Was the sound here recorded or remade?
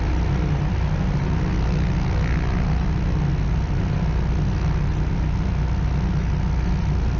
recorded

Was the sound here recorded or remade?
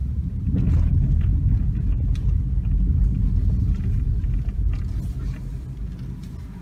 recorded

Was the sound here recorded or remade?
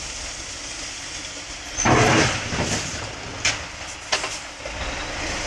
recorded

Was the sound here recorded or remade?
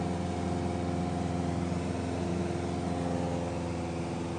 recorded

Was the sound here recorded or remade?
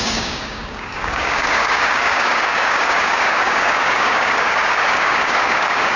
remade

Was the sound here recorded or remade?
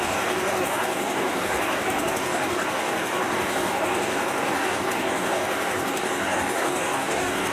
remade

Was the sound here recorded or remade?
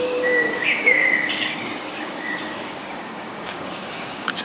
remade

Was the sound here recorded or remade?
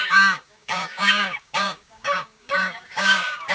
remade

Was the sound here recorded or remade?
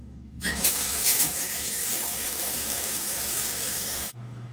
remade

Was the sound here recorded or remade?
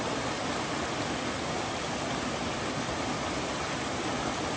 recorded